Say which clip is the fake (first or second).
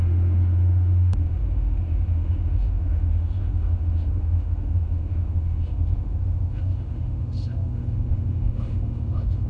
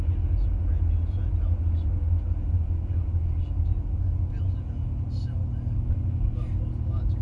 first